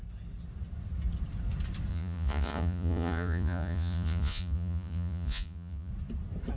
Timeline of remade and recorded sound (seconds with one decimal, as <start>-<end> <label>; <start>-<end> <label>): 0.0-1.9 recorded; 1.9-5.9 remade; 5.9-6.6 recorded